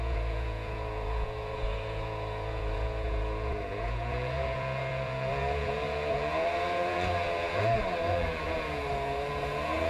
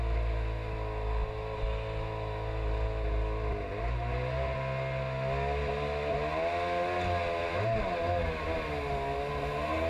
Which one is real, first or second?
second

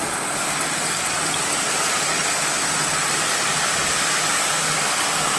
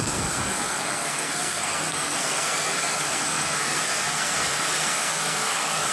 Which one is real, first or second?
first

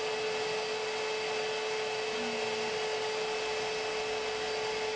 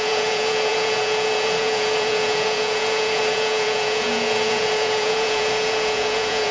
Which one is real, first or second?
first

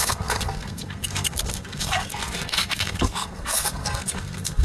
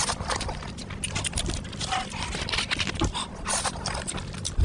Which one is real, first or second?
second